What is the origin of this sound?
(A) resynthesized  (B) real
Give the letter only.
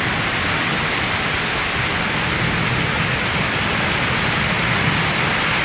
B